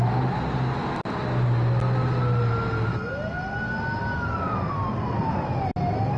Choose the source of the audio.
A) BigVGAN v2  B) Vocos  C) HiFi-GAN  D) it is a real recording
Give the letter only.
D